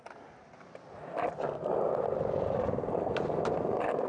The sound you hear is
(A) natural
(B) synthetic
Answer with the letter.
A